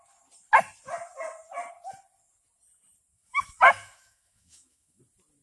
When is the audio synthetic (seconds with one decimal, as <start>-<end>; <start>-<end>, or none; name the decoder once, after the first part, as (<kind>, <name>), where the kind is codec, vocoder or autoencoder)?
3.1-5.0 (autoencoder, DAC-VAE)